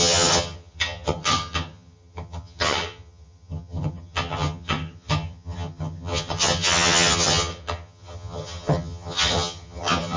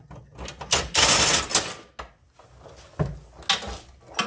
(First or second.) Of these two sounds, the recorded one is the second